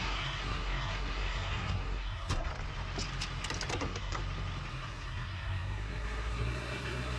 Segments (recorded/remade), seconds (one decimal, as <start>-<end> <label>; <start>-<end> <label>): 0.0-2.5 remade; 2.5-3.7 recorded; 3.7-4.2 remade; 4.2-4.7 recorded; 4.7-7.2 remade